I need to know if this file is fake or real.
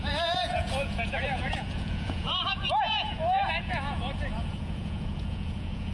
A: fake